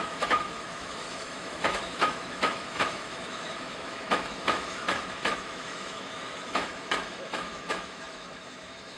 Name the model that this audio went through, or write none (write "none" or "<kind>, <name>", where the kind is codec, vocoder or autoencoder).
autoencoder, DAC-VAE